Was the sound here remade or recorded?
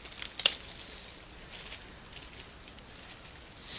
recorded